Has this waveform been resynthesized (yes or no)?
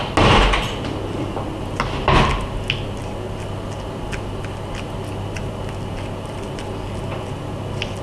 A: no